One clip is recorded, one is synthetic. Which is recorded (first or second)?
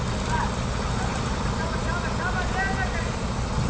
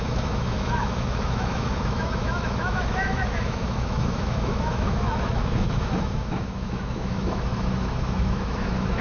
first